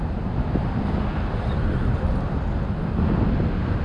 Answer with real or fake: real